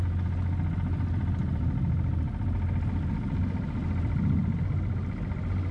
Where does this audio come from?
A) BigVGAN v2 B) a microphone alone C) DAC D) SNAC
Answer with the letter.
B